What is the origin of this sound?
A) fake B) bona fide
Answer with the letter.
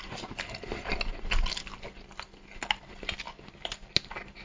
B